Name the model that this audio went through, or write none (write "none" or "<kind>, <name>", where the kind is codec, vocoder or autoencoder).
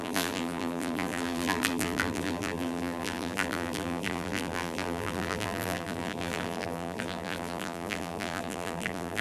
vocoder, BigVGAN v2